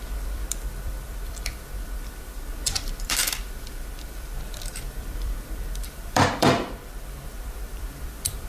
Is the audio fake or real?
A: fake